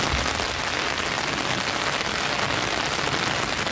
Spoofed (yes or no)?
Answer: no